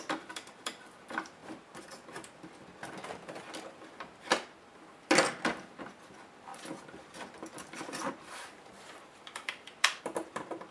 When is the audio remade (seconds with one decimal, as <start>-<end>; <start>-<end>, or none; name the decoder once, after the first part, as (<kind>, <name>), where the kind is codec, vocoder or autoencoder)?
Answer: 0.0-1.4 (vocoder, BigVGAN v2); 5.8-10.7